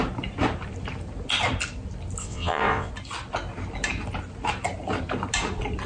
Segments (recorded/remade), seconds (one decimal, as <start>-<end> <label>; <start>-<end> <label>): 0.0-2.2 recorded; 2.2-2.9 remade; 2.9-5.9 recorded